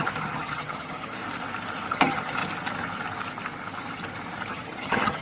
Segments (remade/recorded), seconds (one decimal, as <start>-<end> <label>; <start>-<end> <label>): 0.0-1.2 remade; 1.2-1.9 recorded; 1.9-2.4 remade; 2.4-4.5 recorded; 4.5-5.2 remade